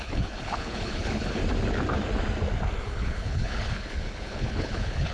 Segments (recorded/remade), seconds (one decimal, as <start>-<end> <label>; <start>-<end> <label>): 0.0-1.4 remade; 1.4-2.8 recorded; 2.8-5.1 remade

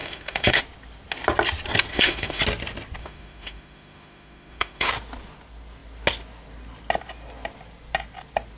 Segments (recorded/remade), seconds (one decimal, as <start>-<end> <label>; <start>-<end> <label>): 0.0-0.6 remade; 0.6-1.9 recorded; 1.9-2.4 remade; 2.4-3.0 recorded; 3.0-4.9 remade; 4.9-8.6 recorded

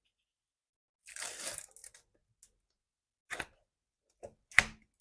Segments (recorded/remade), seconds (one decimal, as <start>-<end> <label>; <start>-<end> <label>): 0.0-5.0 recorded

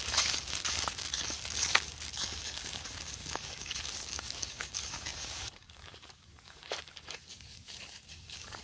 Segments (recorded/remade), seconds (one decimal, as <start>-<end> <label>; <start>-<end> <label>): 0.0-8.6 remade

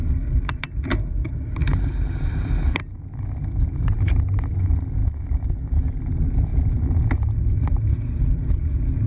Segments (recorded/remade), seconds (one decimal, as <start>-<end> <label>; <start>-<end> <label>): 0.0-5.0 recorded; 5.0-5.7 remade; 5.7-9.1 recorded

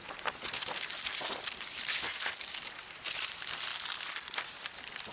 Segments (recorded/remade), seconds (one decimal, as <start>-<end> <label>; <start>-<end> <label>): 0.0-5.1 recorded

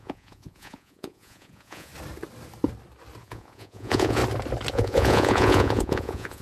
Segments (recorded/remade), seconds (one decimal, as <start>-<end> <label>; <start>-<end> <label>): 0.0-1.9 remade; 1.9-3.2 recorded; 3.2-4.2 remade; 4.2-4.7 recorded; 4.7-6.4 remade

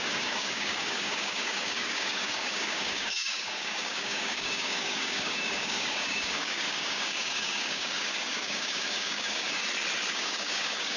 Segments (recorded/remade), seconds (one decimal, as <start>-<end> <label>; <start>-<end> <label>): 0.0-9.6 remade; 9.6-10.1 recorded; 10.1-11.0 remade